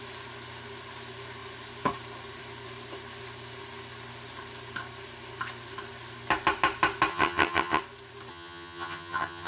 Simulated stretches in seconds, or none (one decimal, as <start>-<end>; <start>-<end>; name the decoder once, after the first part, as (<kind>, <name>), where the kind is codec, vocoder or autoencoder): 7.1-7.8 (vocoder, HiFi-GAN); 8.3-9.5